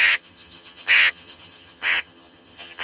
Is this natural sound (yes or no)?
no